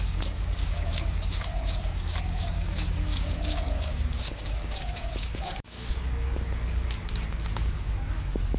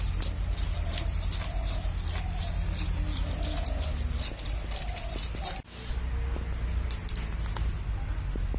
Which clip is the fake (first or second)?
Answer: first